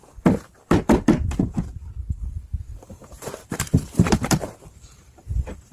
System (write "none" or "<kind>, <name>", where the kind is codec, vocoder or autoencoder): vocoder, BigVGAN v2